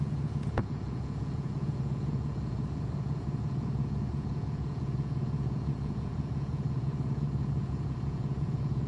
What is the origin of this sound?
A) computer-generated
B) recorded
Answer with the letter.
A